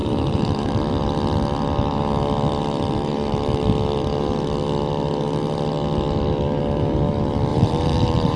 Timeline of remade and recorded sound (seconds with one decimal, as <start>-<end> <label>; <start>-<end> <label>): 0.0-0.7 remade; 0.7-7.5 recorded; 7.5-8.4 remade